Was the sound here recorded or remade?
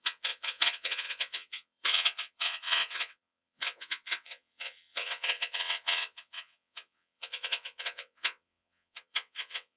remade